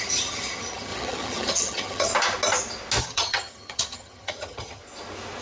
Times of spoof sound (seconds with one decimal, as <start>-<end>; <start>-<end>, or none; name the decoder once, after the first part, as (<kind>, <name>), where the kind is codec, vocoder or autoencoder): 0.0-2.1 (vocoder, HiFi-GAN); 3.0-4.8